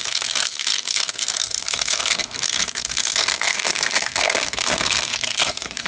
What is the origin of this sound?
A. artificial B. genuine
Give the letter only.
A